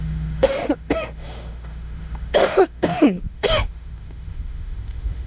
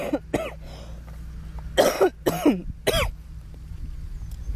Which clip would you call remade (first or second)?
first